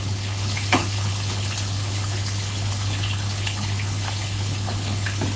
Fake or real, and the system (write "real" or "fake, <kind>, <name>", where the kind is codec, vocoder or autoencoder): fake, codec, HILCodec